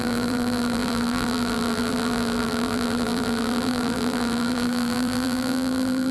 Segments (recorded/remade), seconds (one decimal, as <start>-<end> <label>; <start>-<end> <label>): 0.0-6.1 remade